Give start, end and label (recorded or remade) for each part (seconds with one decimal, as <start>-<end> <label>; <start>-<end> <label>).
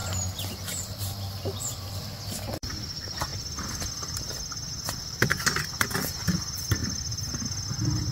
0.0-2.7 remade; 2.7-3.3 recorded; 3.3-4.2 remade; 4.2-6.8 recorded; 6.8-8.1 remade